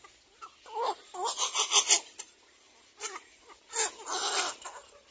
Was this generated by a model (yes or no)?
no